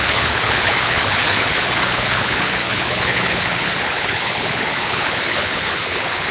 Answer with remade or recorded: remade